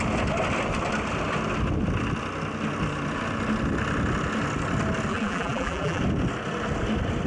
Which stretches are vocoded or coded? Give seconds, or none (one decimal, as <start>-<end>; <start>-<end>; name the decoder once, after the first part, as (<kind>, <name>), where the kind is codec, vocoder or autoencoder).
5.1-6.0 (vocoder, BigVGAN v2)

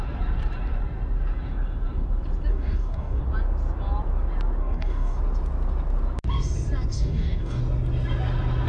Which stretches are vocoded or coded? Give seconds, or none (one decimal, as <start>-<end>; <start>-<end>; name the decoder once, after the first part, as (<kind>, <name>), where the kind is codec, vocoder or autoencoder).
2.5-3.2 (codec, DAC); 4.6-5.2; 6.9-7.6